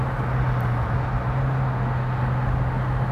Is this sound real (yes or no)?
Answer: yes